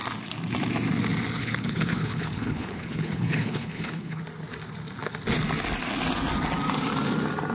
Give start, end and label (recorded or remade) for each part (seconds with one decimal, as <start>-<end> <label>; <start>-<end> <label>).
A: 0.0-1.4 recorded; 1.4-4.2 remade; 4.2-7.5 recorded